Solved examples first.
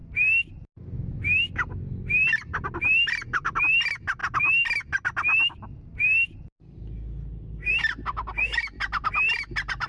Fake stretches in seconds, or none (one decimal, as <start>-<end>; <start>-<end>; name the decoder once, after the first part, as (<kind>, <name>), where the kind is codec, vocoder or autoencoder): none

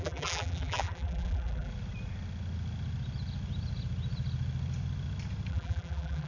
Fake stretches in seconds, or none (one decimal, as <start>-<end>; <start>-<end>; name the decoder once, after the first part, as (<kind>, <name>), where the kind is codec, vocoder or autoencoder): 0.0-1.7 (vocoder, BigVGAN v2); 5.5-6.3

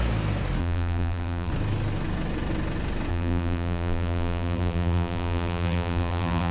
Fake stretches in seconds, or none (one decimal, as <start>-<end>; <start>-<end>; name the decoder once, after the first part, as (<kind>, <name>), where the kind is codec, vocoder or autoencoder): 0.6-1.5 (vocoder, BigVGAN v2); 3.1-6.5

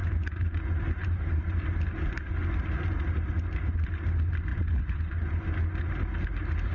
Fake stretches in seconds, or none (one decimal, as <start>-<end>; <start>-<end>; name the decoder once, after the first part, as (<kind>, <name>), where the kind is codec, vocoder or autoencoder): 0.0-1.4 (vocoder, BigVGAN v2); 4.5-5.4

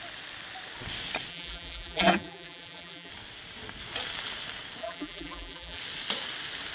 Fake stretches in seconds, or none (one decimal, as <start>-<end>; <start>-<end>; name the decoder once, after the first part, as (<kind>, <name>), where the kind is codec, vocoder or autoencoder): 1.3-3.1 (vocoder, BigVGAN v2); 4.8-5.8

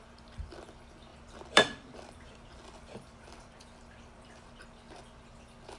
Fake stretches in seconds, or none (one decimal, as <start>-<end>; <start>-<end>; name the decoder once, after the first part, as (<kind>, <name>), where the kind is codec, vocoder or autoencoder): 1.1-4.6 (vocoder, BigVGAN v2)

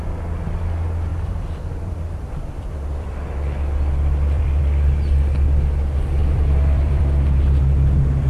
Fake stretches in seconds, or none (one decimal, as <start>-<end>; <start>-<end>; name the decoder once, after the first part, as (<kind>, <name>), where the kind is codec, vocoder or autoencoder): 1.1-4.6 (vocoder, BigVGAN v2); 6.2-7.0

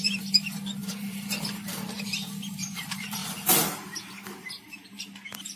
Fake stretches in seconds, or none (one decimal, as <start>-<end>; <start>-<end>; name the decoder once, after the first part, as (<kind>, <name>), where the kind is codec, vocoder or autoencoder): 0.0-3.2 (vocoder, BigVGAN v2); 4.1-5.6